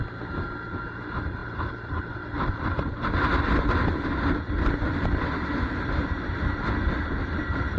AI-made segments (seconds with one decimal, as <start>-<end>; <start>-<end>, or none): none